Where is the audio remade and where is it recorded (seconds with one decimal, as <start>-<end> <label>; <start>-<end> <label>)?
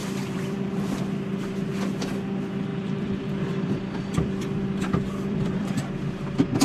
0.0-1.0 remade; 1.0-2.7 recorded; 2.7-5.7 remade; 5.7-6.6 recorded